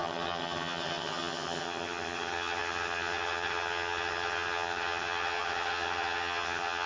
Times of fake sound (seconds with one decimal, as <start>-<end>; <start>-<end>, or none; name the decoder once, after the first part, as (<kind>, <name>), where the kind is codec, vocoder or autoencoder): 0.0-6.9 (vocoder, HiFi-GAN)